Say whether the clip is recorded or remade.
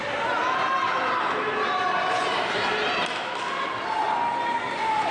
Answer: recorded